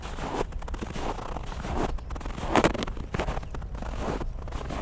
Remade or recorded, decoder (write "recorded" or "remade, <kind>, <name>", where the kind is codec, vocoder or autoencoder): recorded